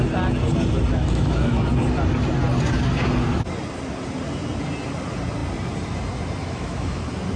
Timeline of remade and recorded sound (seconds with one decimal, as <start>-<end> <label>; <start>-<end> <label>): 0.0-0.9 recorded; 0.9-1.6 remade; 1.6-6.4 recorded; 6.4-7.0 remade; 7.0-7.4 recorded